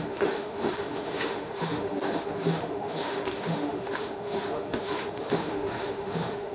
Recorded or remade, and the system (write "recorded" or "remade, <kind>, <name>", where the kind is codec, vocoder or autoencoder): remade, autoencoder, DAC-VAE